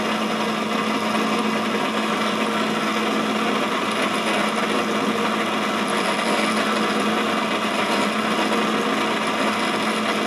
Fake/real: real